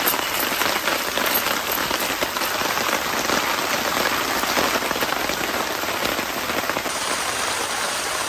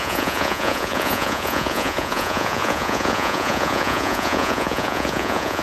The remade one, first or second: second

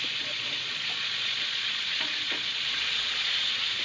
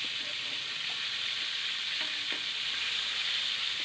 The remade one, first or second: first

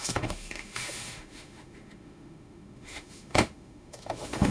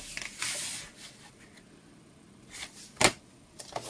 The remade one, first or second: first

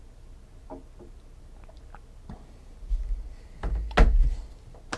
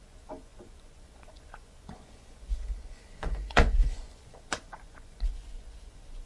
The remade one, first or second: second